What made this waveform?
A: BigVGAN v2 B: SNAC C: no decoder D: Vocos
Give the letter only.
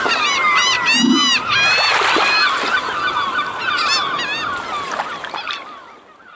C